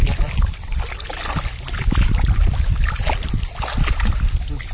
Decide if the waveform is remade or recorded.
recorded